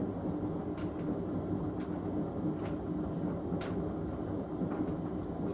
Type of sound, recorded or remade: recorded